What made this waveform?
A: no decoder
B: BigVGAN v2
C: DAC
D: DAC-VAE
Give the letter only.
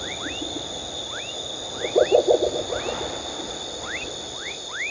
A